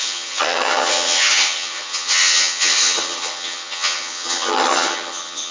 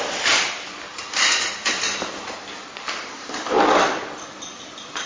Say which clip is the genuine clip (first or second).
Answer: second